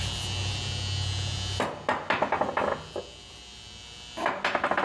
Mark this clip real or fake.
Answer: real